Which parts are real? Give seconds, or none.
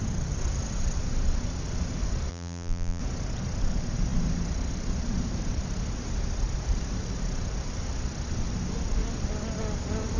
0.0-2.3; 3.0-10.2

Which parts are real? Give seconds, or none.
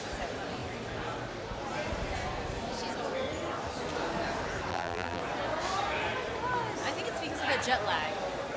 0.0-4.7; 5.2-8.6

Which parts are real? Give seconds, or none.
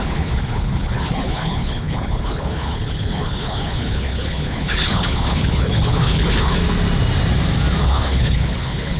6.6-7.8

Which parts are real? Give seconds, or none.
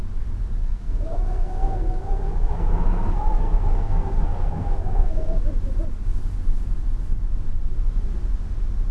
0.0-0.6; 5.4-8.9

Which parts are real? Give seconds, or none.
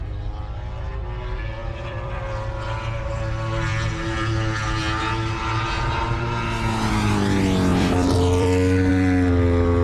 0.0-1.6; 2.2-7.7; 8.9-9.8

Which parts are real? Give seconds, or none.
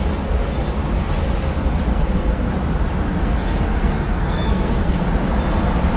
0.0-1.9; 2.5-3.2; 5.1-6.0